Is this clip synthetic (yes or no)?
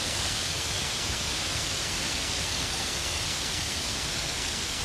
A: yes